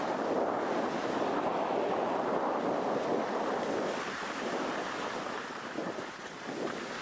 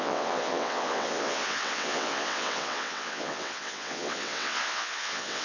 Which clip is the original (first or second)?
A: first